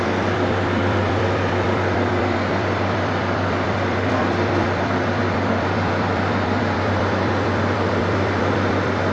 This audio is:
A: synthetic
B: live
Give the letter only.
A